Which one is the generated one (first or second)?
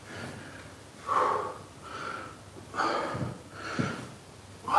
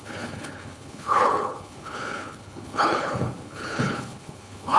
second